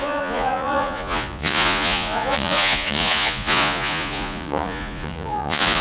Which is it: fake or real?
fake